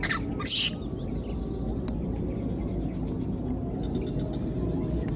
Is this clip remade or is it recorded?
recorded